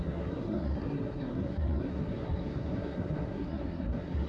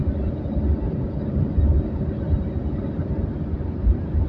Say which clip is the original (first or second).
second